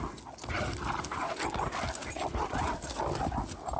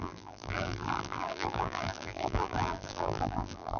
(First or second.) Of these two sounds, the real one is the first